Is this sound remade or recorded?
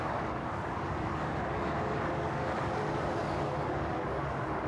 remade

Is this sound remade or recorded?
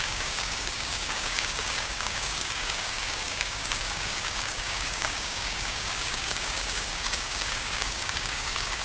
remade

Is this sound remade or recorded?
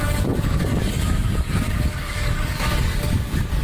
remade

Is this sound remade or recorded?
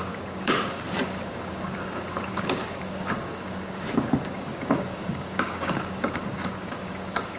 remade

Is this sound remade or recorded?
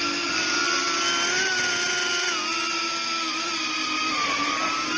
recorded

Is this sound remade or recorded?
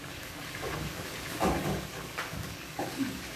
remade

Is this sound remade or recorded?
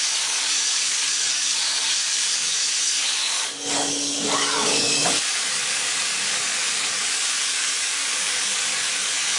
remade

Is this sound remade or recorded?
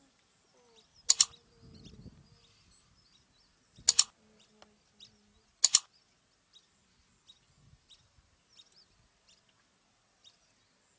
recorded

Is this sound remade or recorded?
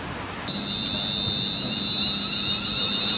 recorded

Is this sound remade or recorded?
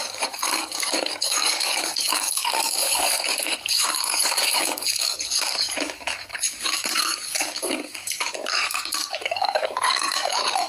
remade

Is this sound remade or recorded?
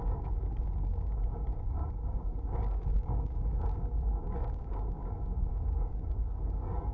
remade